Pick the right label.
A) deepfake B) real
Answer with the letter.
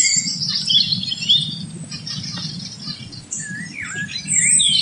B